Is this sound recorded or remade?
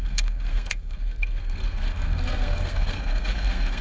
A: remade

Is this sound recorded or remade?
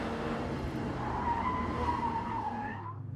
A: remade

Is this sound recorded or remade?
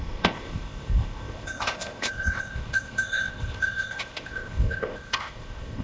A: remade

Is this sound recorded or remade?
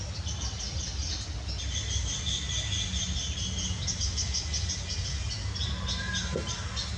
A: recorded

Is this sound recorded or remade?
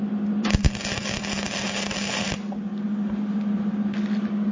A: recorded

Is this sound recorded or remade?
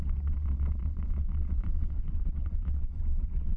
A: remade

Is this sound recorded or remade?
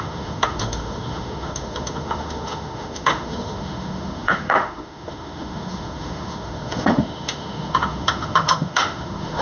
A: remade